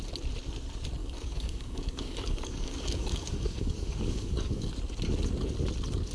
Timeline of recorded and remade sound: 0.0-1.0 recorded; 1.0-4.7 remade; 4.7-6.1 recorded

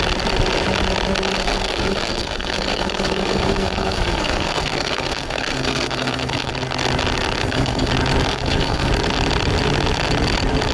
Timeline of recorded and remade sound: 0.0-1.4 recorded; 1.4-6.5 remade; 6.5-7.4 recorded; 7.4-7.9 remade; 7.9-8.3 recorded; 8.3-8.9 remade; 8.9-10.7 recorded